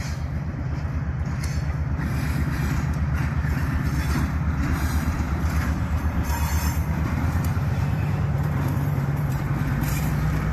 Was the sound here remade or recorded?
remade